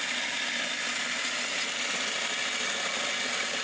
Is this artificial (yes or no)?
no